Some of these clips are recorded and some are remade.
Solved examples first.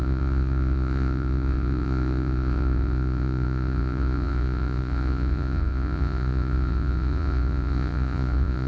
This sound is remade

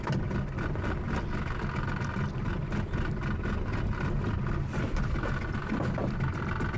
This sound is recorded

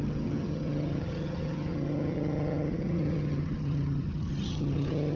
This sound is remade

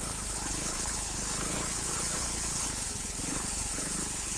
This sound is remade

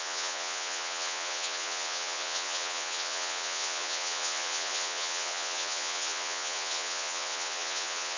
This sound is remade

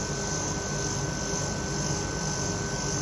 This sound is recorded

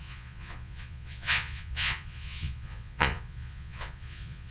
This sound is remade